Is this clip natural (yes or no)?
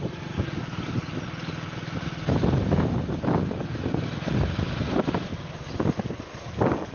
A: yes